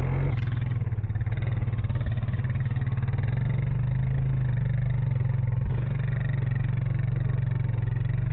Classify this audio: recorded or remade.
recorded